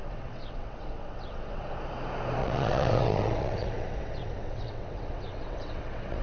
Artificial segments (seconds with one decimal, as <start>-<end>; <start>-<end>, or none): 0.0-1.7; 2.4-6.2